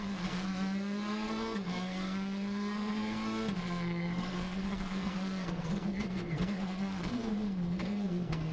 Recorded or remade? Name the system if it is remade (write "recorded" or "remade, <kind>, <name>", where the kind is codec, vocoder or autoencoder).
remade, codec, SNAC